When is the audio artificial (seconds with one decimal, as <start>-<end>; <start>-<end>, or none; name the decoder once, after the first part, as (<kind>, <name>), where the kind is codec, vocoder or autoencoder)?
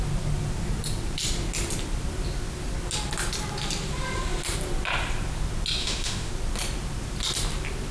5.8-6.3 (autoencoder, DAC-VAE)